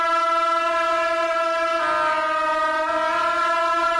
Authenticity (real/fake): real